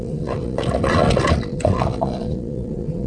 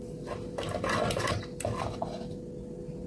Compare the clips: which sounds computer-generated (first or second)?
first